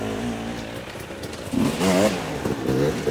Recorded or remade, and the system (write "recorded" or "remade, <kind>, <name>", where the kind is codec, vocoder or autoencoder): recorded